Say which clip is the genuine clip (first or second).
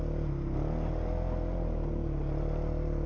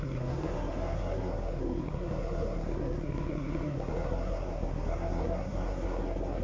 first